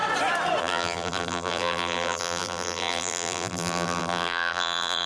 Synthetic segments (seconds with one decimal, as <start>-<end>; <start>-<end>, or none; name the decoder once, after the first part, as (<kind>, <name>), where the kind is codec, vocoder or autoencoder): 0.6-5.1 (vocoder, BigVGAN v2)